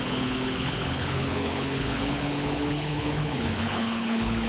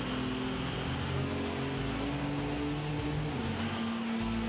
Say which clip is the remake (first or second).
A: first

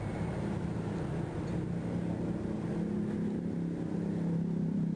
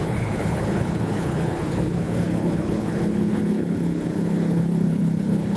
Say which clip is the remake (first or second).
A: second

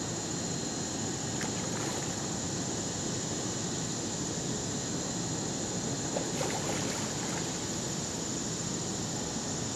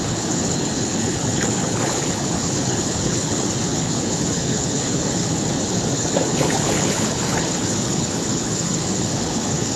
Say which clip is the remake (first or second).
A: second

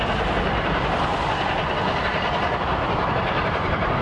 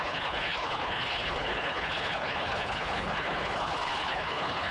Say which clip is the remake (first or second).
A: second